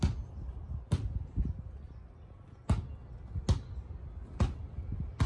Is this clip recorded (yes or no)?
yes